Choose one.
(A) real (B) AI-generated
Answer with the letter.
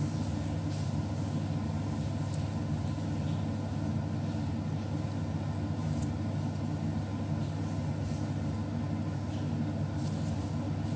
A